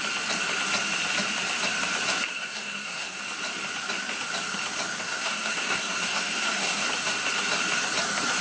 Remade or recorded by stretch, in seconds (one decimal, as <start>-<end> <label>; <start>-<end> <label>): 0.0-2.3 recorded; 2.3-3.2 remade; 3.2-5.0 recorded; 5.0-6.9 remade; 6.9-8.4 recorded